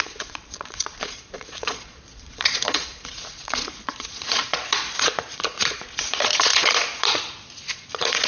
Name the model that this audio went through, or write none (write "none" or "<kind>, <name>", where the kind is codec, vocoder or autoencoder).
vocoder, Vocos